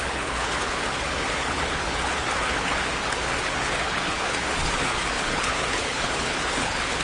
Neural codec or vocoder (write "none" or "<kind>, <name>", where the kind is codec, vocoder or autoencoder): codec, HILCodec